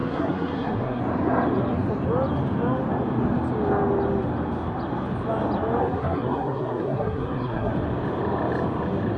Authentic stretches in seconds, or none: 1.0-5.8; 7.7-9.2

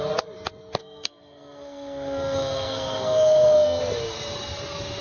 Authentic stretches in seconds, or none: 0.0-0.8; 3.8-5.0